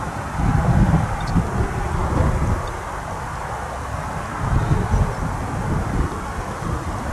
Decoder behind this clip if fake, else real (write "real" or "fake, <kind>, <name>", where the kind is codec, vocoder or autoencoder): real